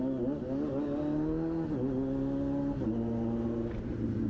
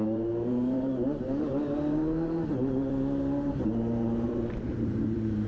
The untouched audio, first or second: first